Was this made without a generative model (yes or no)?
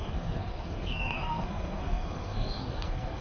no